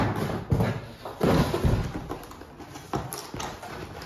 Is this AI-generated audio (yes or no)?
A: no